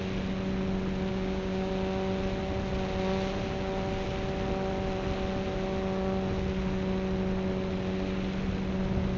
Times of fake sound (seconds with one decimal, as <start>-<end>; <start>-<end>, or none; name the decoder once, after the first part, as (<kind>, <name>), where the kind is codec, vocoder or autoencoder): 1.1-1.7 (codec, DAC)